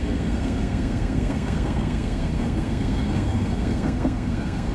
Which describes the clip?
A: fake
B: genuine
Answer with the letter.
A